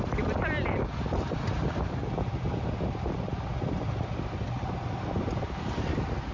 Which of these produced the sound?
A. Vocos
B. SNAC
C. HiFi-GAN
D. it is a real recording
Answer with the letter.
D